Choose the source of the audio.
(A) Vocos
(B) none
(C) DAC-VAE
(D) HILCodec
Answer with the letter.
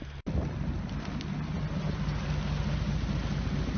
B